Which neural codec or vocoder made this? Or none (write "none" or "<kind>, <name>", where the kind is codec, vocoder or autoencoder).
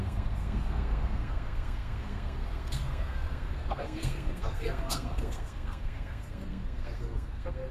codec, SNAC